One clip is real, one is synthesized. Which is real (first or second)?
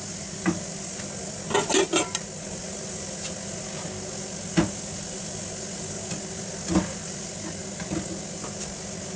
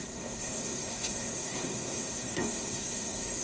first